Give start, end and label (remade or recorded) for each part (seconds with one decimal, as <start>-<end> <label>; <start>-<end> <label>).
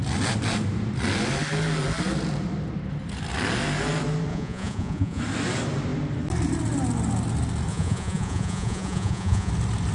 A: 0.0-4.3 recorded; 4.3-5.2 remade; 5.2-7.7 recorded; 7.7-9.5 remade; 9.5-9.9 recorded